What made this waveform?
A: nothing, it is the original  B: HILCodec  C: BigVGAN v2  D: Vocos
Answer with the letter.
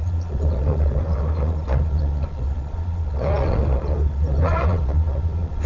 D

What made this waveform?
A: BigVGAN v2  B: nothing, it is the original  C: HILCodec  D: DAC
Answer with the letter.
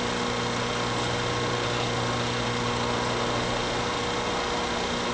B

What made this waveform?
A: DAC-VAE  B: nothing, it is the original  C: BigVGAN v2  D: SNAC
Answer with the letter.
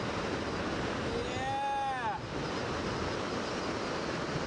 B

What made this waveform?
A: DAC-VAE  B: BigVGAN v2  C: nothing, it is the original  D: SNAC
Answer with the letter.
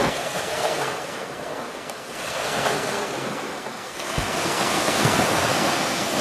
D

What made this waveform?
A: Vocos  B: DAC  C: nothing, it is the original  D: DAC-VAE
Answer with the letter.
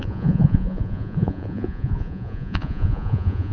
A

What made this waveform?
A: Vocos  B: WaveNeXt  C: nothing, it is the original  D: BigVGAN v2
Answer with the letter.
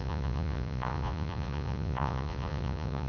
A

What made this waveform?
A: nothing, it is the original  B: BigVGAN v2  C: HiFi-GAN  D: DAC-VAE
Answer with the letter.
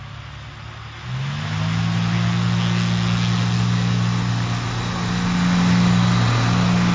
A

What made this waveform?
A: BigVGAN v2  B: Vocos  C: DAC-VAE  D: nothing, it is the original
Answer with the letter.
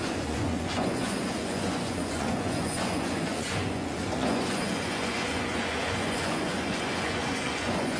B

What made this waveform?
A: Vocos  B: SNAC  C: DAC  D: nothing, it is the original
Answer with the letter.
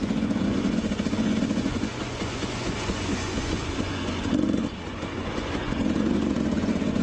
A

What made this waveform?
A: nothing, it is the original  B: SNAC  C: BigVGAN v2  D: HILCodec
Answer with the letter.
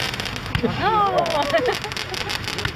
A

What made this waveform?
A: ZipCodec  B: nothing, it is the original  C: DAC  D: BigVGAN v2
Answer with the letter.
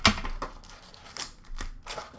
B